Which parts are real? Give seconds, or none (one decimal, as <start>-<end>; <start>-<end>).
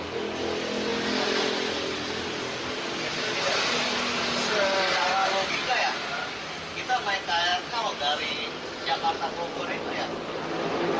0.0-11.0